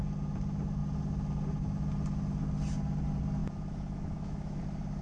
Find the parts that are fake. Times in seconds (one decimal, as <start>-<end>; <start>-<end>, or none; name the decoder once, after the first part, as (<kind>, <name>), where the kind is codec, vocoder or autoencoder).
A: 3.4-4.6 (autoencoder, DAC-VAE)